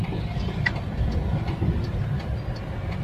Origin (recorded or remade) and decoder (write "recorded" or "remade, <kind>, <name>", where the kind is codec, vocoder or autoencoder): recorded